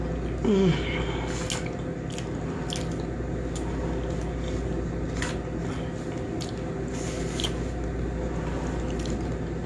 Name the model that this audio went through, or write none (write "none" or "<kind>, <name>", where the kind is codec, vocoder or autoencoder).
none